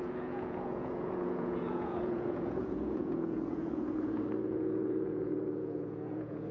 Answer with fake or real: fake